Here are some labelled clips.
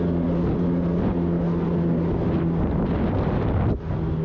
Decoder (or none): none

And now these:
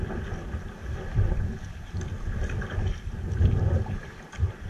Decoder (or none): none